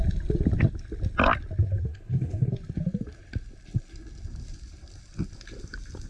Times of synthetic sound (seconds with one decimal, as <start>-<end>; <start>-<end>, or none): 1.9-2.5